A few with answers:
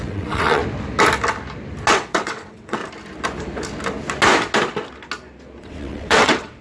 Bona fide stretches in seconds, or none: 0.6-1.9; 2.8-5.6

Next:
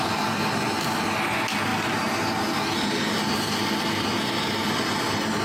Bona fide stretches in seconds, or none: 0.0-5.4

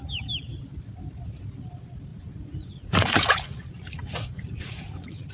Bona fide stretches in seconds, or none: 0.0-2.1

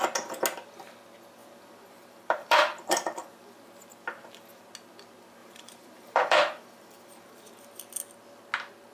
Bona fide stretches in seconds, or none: 0.0-1.4; 3.5-5.4; 7.6-8.9

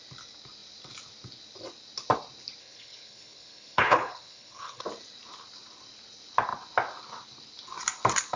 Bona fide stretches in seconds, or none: 0.0-2.6; 4.8-8.4

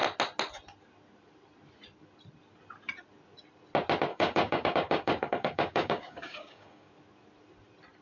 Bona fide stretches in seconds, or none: 0.0-4.1; 6.9-8.0

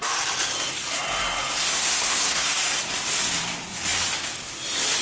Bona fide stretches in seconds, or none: 0.0-1.6; 2.8-5.0